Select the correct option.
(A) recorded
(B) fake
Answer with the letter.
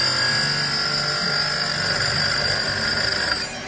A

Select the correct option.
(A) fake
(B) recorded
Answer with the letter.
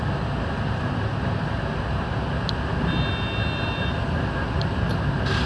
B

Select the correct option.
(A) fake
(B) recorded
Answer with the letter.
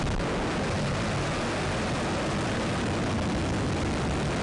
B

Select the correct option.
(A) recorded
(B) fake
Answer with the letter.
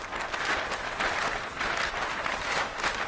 A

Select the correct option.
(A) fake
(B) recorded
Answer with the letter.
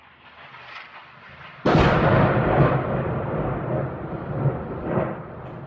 A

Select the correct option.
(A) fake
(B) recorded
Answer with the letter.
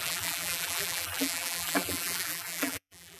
A